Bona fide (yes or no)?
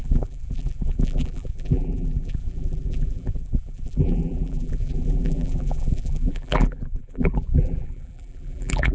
no